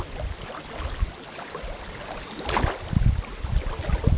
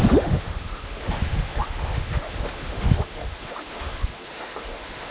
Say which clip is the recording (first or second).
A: first